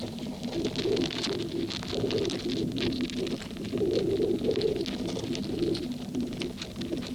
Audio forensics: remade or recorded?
recorded